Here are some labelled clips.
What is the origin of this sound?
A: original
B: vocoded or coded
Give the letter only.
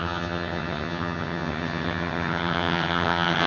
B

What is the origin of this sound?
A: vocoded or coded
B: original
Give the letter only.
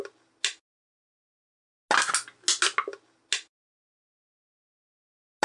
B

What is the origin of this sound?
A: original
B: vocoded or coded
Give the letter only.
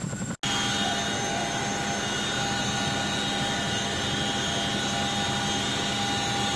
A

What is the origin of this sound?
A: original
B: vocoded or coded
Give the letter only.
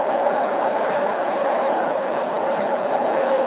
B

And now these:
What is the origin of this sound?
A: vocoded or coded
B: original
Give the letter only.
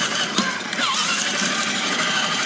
A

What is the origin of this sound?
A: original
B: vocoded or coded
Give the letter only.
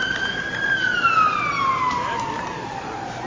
A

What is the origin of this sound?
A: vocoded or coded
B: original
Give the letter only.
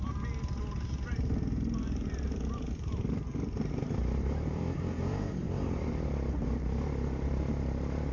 A